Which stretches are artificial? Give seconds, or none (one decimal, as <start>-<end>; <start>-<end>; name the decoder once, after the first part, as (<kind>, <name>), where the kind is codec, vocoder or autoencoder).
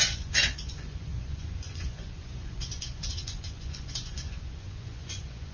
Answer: 0.0-5.5 (vocoder, Vocos)